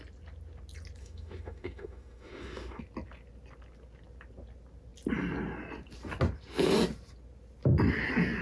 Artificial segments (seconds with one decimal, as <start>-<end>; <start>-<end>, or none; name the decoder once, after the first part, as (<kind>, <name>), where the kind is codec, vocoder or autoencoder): 1.0-2.8 (autoencoder, DAC-VAE)